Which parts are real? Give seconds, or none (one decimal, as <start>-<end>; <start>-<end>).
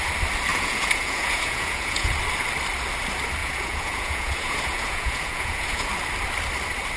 0.0-0.5; 2.1-3.4; 5.9-7.0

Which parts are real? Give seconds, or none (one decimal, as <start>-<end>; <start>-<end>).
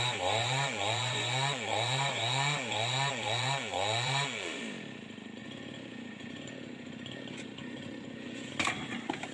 0.0-0.4; 4.6-5.4; 8.5-9.3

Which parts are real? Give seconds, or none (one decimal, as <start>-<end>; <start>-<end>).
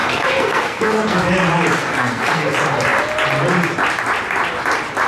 1.3-1.8; 2.5-5.1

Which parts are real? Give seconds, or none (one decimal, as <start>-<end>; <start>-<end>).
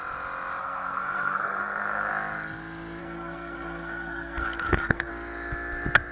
0.0-0.6; 2.1-3.0; 5.1-6.1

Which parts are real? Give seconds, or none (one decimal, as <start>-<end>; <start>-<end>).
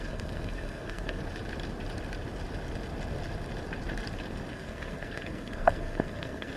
1.2-4.5